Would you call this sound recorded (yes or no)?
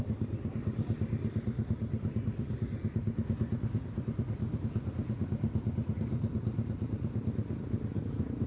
yes